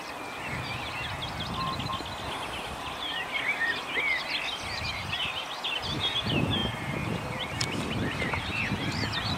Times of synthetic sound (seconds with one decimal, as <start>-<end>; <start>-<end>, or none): 6.6-8.3